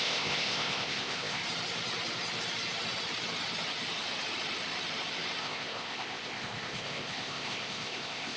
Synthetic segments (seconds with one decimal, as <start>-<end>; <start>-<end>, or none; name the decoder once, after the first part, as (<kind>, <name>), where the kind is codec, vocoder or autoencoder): 0.0-1.4 (codec, ZipCodec); 5.4-8.4